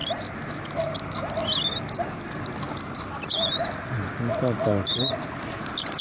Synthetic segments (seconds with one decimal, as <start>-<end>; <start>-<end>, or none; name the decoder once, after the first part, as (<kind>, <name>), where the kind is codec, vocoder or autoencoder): 2.7-3.6 (vocoder, BigVGAN v2); 4.3-6.0